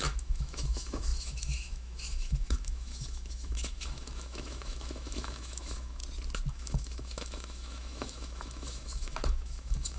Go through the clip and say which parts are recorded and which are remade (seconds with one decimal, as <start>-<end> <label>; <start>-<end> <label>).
0.0-6.0 remade; 6.0-6.5 recorded; 6.5-10.0 remade